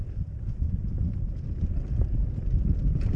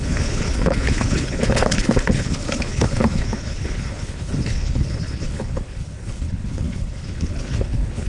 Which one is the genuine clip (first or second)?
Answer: first